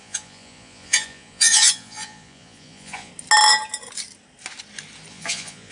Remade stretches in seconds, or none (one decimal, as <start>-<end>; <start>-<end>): 0.0-3.1; 5.1-5.7